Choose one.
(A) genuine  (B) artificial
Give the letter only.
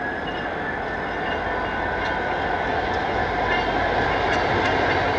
A